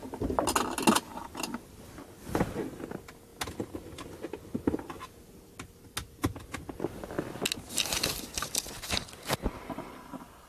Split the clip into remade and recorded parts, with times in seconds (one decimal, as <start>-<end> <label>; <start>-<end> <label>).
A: 0.0-10.5 recorded

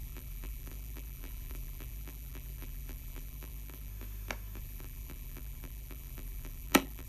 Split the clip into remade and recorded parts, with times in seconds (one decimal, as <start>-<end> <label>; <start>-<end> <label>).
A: 0.0-3.9 remade; 3.9-4.6 recorded; 4.6-7.1 remade

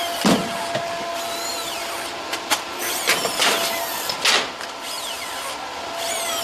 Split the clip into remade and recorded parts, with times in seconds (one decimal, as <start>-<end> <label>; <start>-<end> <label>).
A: 0.0-6.4 recorded

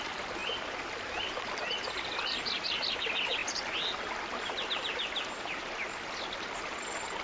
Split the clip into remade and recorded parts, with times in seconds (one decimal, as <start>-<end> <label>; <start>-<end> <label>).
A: 0.0-7.2 recorded